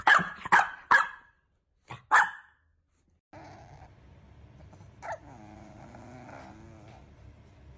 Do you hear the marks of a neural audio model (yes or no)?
no